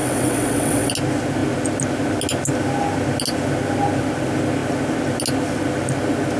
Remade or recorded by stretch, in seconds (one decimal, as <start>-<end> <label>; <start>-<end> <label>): 0.0-0.9 remade; 0.9-6.4 recorded